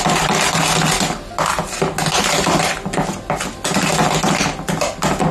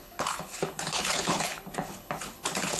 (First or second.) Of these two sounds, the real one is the first